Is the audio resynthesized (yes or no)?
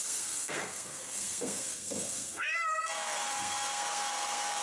yes